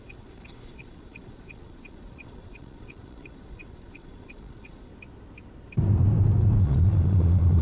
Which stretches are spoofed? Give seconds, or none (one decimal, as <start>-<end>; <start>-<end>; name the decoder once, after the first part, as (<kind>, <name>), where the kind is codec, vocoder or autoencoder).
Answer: 0.0-4.9 (vocoder, Vocos); 6.6-7.6